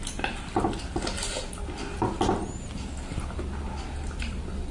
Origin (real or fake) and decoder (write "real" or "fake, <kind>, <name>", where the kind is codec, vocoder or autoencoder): real